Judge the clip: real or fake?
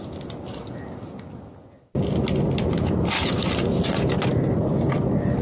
real